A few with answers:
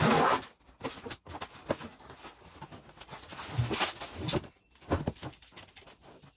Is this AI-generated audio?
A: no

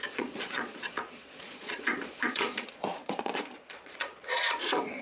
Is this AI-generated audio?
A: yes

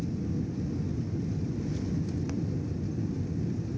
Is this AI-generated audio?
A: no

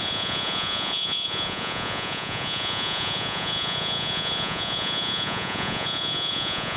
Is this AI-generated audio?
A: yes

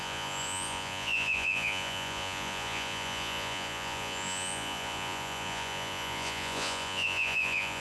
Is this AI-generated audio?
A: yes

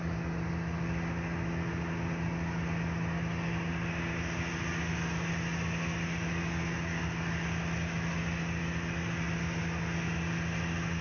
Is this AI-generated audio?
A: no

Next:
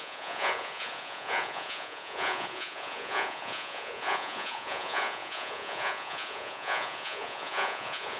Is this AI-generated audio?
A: yes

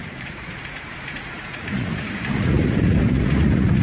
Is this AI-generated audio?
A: yes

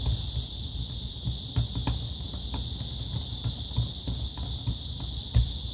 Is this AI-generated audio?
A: no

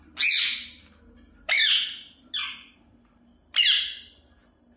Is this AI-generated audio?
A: no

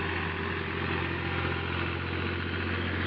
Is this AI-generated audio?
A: no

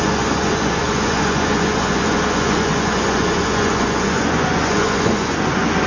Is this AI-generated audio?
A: yes